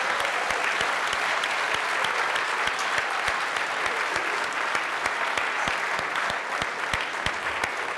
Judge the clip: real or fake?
real